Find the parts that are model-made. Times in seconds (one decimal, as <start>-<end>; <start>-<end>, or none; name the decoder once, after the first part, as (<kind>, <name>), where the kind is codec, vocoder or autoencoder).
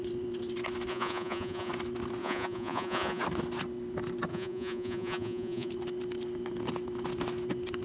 0.9-1.7 (vocoder, Vocos); 2.2-3.2; 4.3-5.7